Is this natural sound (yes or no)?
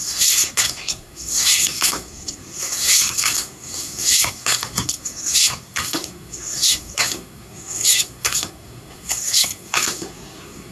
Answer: no